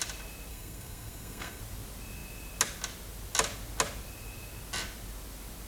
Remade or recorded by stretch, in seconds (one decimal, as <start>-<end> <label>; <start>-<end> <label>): 0.0-0.5 recorded; 0.5-1.6 remade; 1.6-5.7 recorded